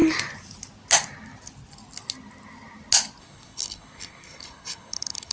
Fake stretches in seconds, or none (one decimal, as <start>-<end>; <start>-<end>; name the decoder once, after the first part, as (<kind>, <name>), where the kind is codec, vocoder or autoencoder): 3.2-5.3 (codec, HILCodec)